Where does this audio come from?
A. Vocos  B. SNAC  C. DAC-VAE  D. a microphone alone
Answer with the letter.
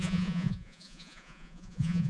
A